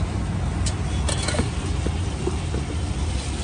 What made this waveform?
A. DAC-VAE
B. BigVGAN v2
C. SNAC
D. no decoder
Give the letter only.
D